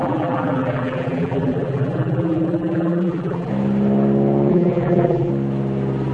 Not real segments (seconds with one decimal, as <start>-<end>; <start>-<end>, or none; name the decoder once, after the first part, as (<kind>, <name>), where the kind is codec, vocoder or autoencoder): 0.0-3.5 (vocoder, BigVGAN v2); 4.5-5.3